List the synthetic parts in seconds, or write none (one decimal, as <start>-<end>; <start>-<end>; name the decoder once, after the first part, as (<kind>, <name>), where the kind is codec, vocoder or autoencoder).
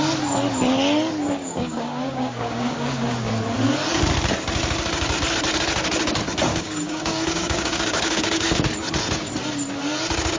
1.4-3.3 (codec, DAC); 6.5-8.7